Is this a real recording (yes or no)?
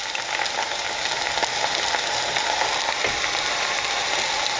yes